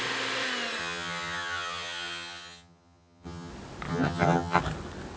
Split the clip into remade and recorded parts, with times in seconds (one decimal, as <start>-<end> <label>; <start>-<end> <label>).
0.0-0.8 recorded; 0.8-3.5 remade; 3.5-3.9 recorded; 3.9-4.6 remade; 4.6-5.2 recorded